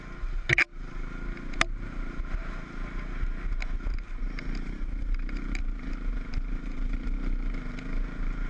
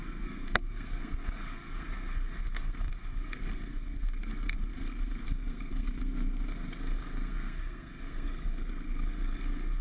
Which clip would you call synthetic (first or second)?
second